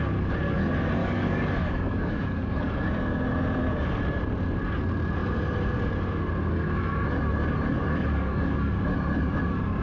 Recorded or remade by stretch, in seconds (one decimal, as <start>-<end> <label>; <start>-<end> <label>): 0.0-1.0 recorded; 1.0-2.7 remade; 2.7-7.7 recorded; 7.7-8.7 remade; 8.7-9.8 recorded